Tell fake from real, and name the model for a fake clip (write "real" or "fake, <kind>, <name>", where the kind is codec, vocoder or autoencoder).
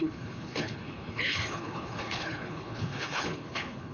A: fake, codec, HILCodec